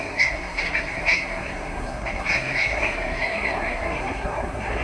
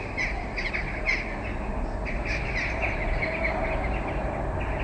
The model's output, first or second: first